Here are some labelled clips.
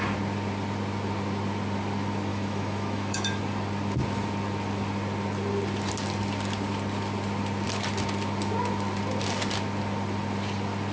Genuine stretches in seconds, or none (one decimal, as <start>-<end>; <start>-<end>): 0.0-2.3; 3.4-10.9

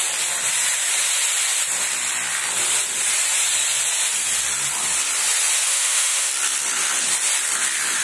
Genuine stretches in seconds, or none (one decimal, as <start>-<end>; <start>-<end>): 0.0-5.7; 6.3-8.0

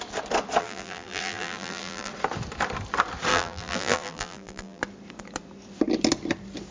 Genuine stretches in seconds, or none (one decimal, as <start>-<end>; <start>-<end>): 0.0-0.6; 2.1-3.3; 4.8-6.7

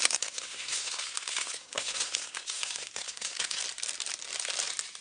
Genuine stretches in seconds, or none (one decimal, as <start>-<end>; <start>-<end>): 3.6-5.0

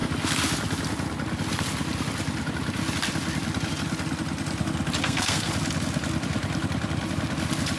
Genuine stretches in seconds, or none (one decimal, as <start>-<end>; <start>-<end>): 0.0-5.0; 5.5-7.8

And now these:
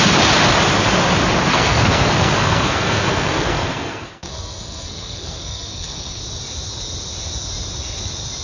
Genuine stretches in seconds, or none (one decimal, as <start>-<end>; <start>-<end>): 0.0-1.5; 6.2-8.4

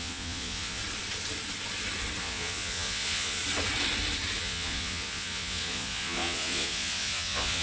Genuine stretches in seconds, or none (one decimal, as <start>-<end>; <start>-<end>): 0.8-2.2; 3.4-4.4